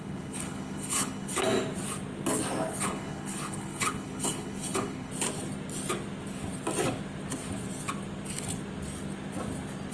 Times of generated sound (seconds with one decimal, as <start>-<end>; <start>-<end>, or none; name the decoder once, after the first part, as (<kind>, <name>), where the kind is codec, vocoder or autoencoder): 0.0-1.4 (codec, HILCodec); 2.7-5.1